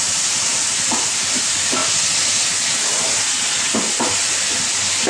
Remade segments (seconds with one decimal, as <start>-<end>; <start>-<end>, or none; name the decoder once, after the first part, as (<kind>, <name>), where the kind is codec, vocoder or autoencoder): 0.5-1.4 (vocoder, BigVGAN v2)